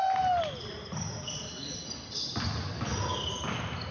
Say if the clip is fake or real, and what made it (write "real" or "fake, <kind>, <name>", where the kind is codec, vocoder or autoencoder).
real